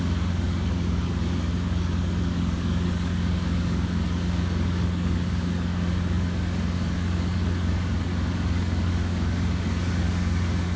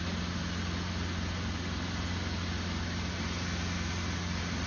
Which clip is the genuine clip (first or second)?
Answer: second